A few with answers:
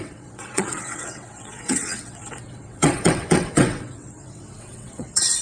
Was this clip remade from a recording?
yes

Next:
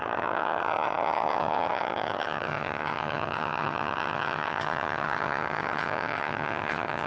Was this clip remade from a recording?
yes